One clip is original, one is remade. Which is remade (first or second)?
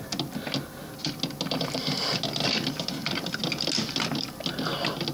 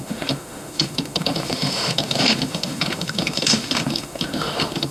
second